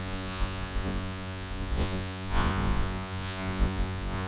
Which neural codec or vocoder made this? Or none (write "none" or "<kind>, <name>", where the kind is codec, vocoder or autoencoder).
vocoder, Vocos